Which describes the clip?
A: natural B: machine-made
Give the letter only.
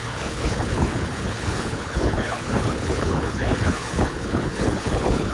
B